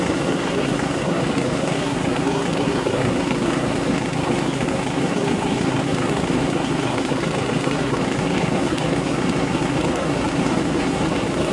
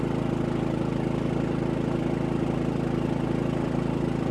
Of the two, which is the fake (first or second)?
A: first